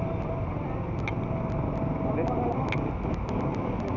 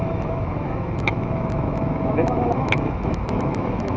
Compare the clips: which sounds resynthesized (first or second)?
second